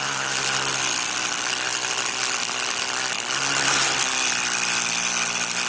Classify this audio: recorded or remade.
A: recorded